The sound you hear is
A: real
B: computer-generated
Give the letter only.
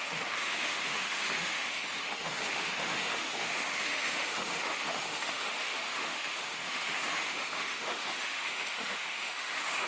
B